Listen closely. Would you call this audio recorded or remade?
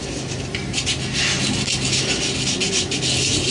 recorded